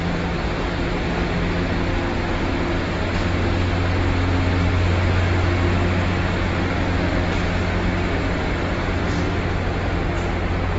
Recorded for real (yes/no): yes